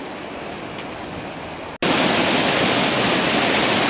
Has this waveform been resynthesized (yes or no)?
no